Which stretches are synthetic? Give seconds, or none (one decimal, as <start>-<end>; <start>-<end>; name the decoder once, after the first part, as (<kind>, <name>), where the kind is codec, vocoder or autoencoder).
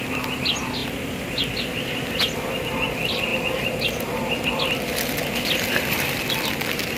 none